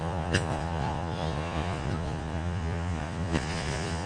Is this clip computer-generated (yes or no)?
yes